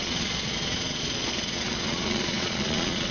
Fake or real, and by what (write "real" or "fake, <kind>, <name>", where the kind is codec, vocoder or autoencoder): fake, vocoder, Vocos